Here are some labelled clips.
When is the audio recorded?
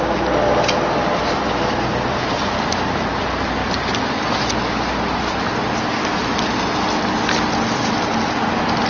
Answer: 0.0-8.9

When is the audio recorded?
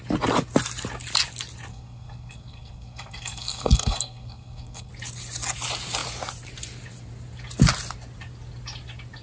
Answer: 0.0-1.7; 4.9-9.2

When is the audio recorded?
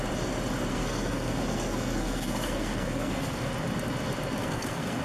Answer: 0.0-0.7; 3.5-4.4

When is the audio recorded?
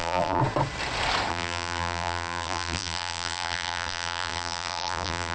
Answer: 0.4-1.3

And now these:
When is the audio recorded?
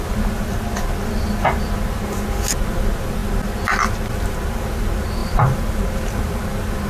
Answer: 0.0-5.2; 6.4-6.9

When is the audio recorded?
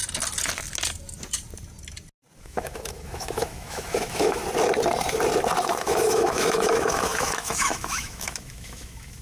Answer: 0.0-2.4; 4.4-5.6